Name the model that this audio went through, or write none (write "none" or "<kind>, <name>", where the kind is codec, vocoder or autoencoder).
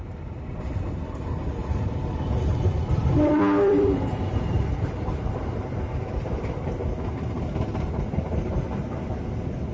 vocoder, BigVGAN v2